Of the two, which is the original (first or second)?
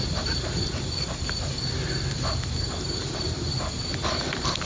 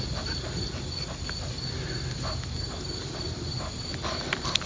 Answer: second